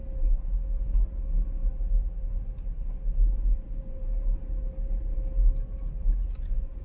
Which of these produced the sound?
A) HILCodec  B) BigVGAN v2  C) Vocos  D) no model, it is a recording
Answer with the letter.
D